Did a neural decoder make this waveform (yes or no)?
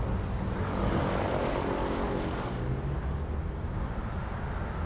no